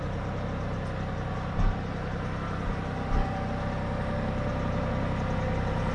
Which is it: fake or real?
real